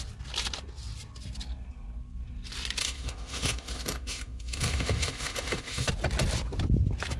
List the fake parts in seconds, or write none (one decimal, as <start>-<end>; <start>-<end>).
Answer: 2.8-5.9